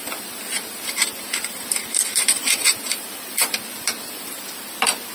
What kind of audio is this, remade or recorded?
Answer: remade